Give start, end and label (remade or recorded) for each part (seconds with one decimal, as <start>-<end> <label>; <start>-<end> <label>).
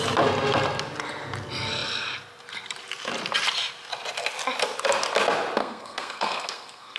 0.0-5.6 recorded; 5.6-7.0 remade